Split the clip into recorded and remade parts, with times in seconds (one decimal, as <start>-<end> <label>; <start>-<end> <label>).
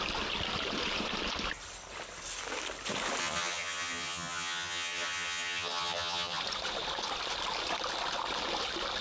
0.0-3.2 recorded; 3.2-6.4 remade; 6.4-9.0 recorded